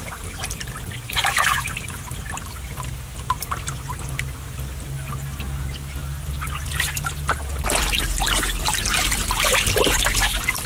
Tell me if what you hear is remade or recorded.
recorded